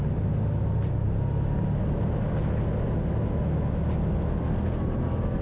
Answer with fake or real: real